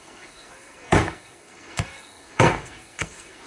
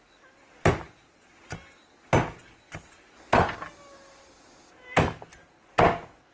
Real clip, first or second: second